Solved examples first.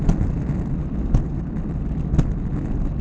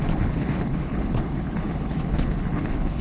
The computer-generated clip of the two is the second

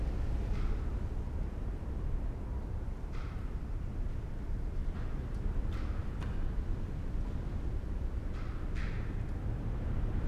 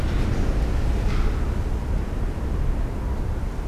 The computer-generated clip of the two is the first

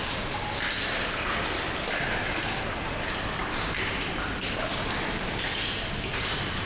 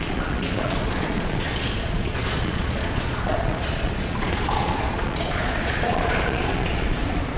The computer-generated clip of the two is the second